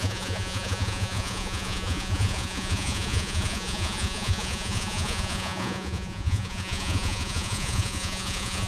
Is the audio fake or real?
fake